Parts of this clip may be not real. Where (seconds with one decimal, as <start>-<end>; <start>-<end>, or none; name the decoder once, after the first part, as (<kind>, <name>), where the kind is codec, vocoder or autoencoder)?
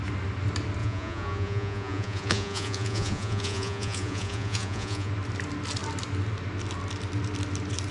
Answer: 0.8-5.1 (vocoder, Vocos)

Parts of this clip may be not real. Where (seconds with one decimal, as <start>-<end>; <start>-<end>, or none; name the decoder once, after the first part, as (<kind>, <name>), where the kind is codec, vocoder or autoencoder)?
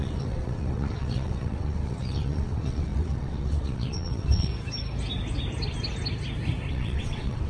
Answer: 0.0-4.5 (vocoder, WaveNeXt); 6.7-7.5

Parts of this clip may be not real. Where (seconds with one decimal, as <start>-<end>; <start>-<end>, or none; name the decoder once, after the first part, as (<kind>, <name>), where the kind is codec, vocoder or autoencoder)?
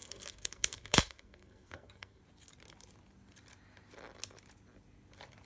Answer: 0.0-2.2 (codec, SNAC)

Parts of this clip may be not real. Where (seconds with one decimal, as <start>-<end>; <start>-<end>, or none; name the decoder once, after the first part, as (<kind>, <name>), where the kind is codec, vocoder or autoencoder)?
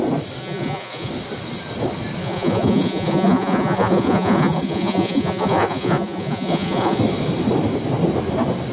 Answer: 0.4-1.1 (vocoder, Vocos); 2.2-7.0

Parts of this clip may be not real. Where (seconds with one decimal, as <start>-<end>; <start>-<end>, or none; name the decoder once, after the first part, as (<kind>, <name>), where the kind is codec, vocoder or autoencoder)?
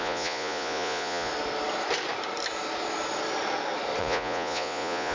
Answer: 0.0-1.3 (vocoder, Vocos); 4.0-5.1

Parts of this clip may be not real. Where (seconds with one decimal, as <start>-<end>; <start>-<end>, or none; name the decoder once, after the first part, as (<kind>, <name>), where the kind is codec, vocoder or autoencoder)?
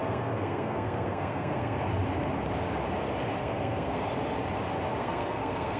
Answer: 0.0-1.8 (codec, SNAC); 3.4-4.1; 5.0-5.8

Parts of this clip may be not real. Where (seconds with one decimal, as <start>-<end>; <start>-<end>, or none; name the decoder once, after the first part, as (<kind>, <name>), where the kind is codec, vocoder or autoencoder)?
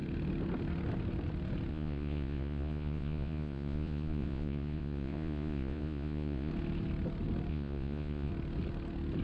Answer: 1.7-6.5 (vocoder, Vocos); 7.5-8.3